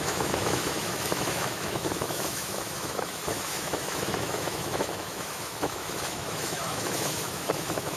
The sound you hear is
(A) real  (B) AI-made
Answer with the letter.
B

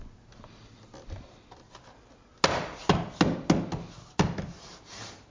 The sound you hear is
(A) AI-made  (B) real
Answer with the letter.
B